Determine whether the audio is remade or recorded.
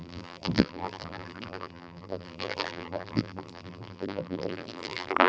remade